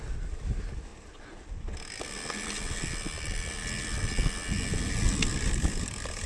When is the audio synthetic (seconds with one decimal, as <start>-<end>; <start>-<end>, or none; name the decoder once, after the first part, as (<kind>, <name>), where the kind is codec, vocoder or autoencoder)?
none